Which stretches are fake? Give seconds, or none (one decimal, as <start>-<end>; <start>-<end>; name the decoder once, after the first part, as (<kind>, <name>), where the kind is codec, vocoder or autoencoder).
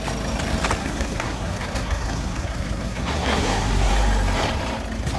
0.8-3.9 (codec, SNAC)